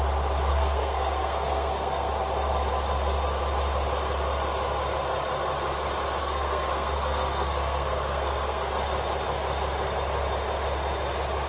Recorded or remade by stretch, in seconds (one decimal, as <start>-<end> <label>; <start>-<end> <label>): 0.0-0.5 recorded; 0.5-2.1 remade; 2.1-6.2 recorded; 6.2-8.7 remade; 8.7-11.5 recorded